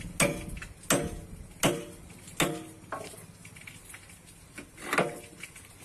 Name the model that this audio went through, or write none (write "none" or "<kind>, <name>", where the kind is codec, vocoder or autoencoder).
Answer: none